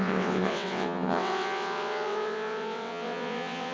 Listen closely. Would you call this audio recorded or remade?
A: remade